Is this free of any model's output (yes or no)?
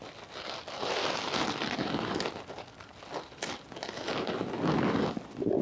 yes